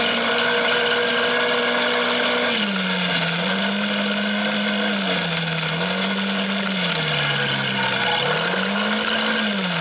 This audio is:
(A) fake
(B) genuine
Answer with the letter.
B